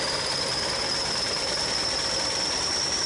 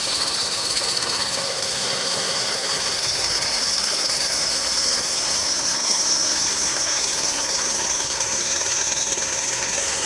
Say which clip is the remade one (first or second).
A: second